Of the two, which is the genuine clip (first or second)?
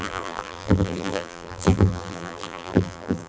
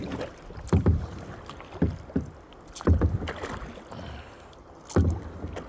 second